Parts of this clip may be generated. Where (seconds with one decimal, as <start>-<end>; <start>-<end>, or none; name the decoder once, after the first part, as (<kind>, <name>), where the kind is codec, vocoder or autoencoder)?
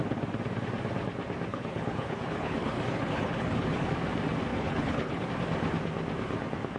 1.5-3.9 (codec, HILCodec); 4.5-5.3